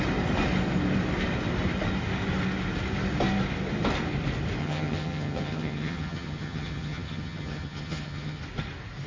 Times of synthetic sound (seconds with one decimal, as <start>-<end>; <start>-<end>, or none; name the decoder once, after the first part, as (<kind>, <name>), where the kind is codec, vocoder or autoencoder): 4.6-8.4 (vocoder, HiFi-GAN)